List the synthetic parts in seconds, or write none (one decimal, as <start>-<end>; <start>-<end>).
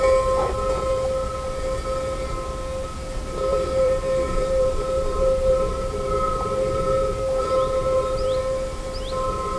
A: 3.5-8.4